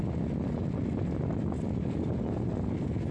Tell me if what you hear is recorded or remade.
recorded